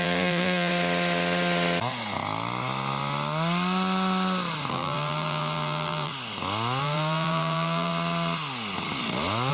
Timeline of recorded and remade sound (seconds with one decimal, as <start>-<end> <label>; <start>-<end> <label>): 0.0-0.7 remade; 0.7-4.7 recorded; 4.7-6.1 remade; 6.1-6.8 recorded; 6.8-7.9 remade; 7.9-9.5 recorded